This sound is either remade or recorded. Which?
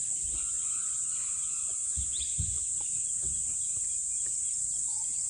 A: recorded